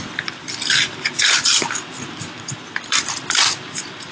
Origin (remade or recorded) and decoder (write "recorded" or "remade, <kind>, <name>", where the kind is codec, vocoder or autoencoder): remade, vocoder, BigVGAN v2